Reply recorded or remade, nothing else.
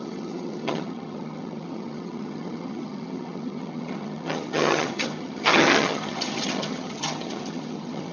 remade